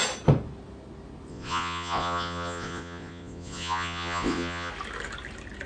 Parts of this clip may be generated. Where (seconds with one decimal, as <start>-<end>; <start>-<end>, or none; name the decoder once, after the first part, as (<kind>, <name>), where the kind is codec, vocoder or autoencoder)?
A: 1.3-4.7 (vocoder, Vocos)

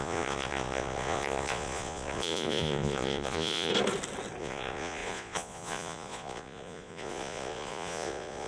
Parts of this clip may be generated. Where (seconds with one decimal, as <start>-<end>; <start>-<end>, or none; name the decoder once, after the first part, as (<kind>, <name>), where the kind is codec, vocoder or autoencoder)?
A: 0.0-3.7 (vocoder, Vocos); 4.4-8.5